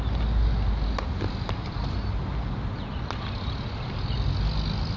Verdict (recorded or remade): recorded